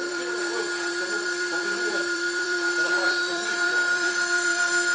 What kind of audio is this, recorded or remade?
remade